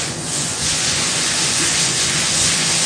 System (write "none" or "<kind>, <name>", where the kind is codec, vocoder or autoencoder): vocoder, Vocos